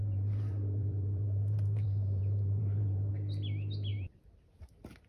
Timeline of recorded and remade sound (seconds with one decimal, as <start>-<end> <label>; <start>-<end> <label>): 0.0-3.1 remade; 3.1-3.9 recorded; 3.9-4.5 remade; 4.5-5.1 recorded